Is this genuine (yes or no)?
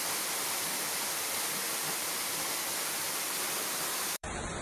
no